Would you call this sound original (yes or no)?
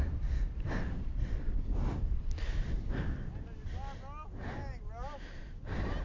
yes